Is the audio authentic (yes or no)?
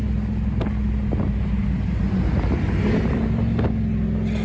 yes